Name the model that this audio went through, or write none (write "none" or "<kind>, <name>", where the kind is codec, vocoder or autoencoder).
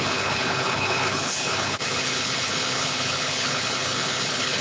codec, HILCodec